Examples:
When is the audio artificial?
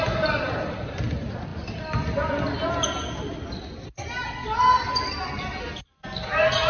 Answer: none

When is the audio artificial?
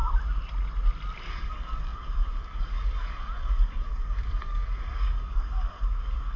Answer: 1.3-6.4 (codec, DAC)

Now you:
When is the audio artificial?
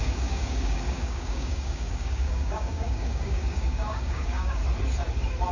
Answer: 0.0-4.6 (codec, DAC)